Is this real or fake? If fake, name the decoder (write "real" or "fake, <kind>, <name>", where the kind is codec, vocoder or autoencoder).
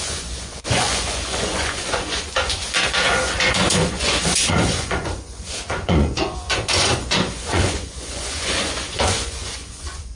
fake, vocoder, Vocos